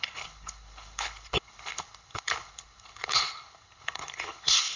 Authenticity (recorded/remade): remade